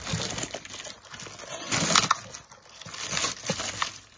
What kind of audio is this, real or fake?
real